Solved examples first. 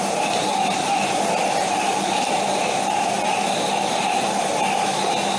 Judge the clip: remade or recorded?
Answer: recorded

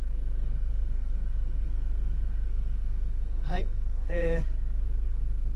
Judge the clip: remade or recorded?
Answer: remade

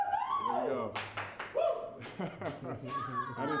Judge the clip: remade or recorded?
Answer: recorded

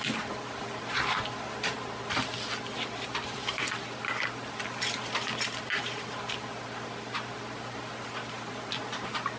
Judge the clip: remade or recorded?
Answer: recorded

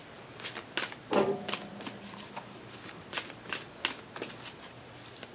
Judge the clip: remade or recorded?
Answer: recorded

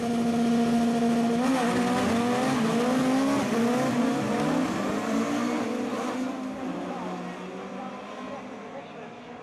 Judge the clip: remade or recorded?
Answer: recorded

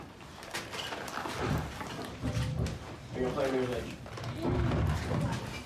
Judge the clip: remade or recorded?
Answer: recorded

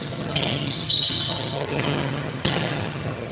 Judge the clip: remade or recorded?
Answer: remade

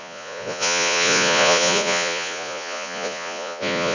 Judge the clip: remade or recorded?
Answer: remade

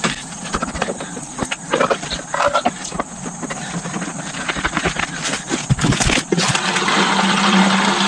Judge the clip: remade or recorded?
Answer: remade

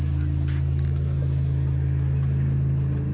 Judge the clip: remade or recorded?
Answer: recorded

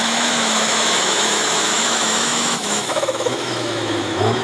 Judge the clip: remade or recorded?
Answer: remade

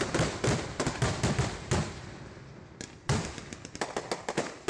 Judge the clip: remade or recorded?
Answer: recorded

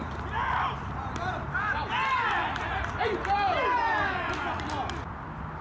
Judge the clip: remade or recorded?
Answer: recorded